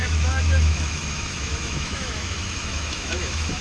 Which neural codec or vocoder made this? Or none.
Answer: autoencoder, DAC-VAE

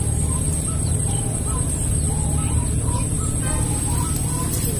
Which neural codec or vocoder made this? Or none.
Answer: none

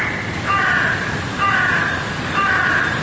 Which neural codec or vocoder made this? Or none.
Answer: none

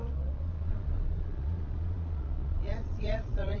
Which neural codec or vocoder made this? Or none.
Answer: vocoder, Vocos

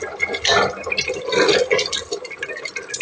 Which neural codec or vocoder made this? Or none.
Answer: none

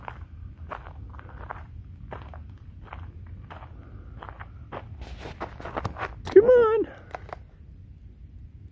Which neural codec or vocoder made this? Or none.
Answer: none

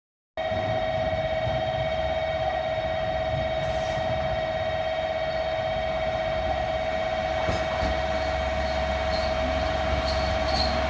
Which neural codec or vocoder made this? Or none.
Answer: none